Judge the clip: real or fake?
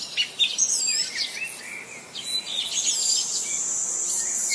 real